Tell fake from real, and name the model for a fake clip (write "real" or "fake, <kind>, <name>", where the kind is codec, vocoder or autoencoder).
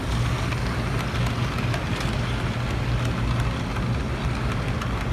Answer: real